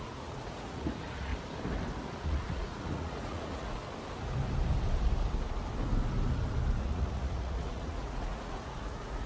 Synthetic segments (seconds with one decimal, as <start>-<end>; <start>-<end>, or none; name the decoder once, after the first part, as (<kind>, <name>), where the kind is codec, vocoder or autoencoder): 0.0-1.3 (vocoder, Vocos); 2.2-3.8; 6.8-9.3